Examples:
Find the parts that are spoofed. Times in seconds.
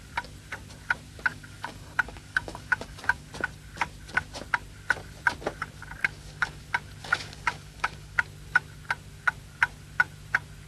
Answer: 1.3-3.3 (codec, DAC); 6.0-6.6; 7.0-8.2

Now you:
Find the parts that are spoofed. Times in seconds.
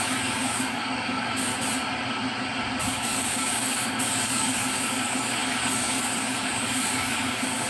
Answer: 0.0-1.5 (codec, DAC); 2.8-7.7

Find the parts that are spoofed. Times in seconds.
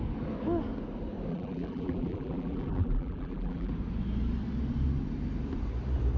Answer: 1.3-3.7 (vocoder, BigVGAN v2)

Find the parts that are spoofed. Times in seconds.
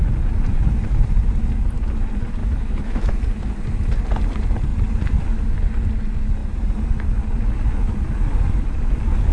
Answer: 2.4-3.1 (autoencoder, DAC-VAE)